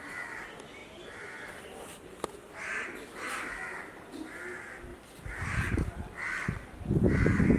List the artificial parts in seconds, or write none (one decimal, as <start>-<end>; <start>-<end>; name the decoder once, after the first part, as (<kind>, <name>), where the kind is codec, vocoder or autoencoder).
0.8-3.1 (vocoder, BigVGAN v2); 4.9-6.9